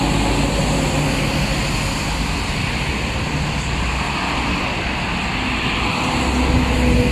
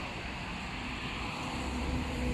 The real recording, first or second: first